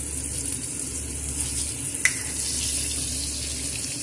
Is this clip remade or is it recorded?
recorded